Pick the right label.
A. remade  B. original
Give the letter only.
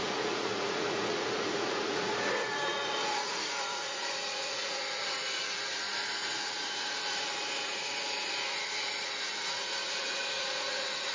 A